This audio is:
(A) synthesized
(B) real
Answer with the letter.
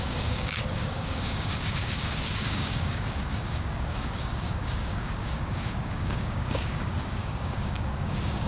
A